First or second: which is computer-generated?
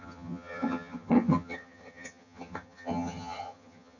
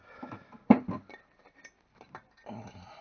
first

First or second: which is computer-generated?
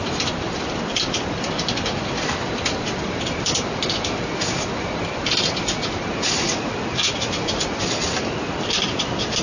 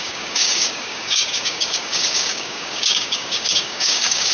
second